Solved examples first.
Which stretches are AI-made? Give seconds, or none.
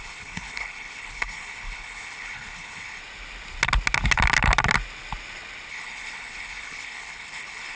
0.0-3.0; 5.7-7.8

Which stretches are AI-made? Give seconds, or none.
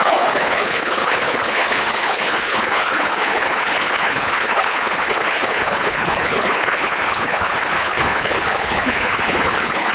0.0-9.9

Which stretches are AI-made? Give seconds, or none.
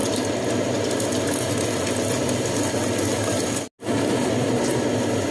none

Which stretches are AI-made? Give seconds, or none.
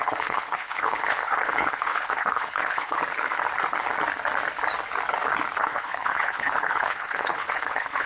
0.0-3.0; 5.6-8.1